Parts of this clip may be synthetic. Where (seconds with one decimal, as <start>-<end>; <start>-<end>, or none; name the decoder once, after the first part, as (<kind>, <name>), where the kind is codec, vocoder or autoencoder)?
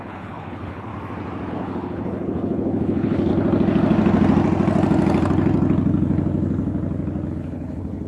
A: 0.0-0.9 (codec, HILCodec); 1.5-3.3; 7.3-8.1